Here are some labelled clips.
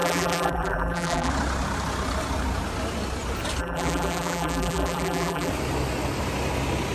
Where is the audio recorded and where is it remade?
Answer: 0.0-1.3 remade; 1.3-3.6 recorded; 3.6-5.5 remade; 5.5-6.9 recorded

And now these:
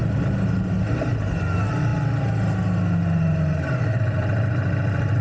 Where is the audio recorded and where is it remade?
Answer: 0.0-5.2 recorded

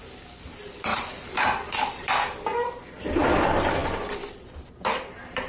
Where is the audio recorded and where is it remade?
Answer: 0.0-5.5 recorded

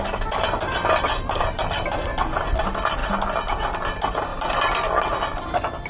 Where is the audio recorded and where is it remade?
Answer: 0.0-5.9 recorded

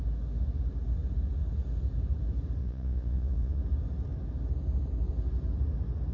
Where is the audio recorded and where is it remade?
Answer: 0.0-2.6 recorded; 2.6-3.6 remade; 3.6-6.1 recorded

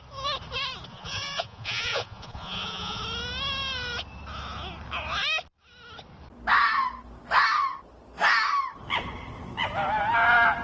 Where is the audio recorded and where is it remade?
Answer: 0.0-0.9 recorded; 0.9-3.0 remade; 3.0-10.6 recorded

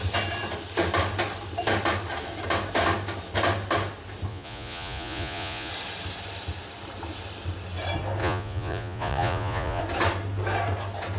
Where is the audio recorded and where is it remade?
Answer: 0.0-4.3 recorded; 4.3-5.7 remade; 5.7-8.2 recorded; 8.2-9.8 remade; 9.8-11.2 recorded